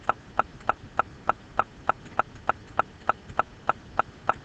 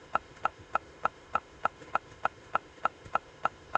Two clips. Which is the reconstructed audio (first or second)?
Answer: second